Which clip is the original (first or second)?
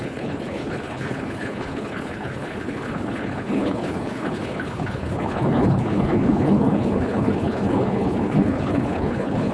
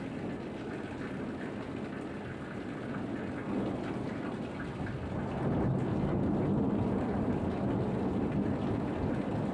second